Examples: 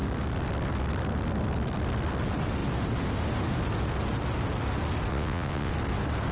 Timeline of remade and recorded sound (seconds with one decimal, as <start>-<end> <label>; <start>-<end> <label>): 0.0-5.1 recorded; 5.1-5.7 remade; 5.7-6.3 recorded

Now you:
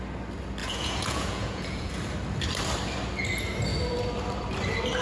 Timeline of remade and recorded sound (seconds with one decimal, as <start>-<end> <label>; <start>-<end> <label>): 0.0-0.6 recorded; 0.6-1.9 remade; 1.9-5.0 recorded

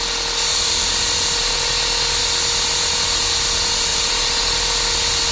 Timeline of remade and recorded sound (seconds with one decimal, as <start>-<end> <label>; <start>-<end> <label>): 0.0-0.5 recorded; 0.5-1.7 remade; 1.7-3.9 recorded; 3.9-4.4 remade; 4.4-5.3 recorded